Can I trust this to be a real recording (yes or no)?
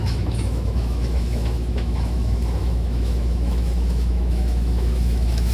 no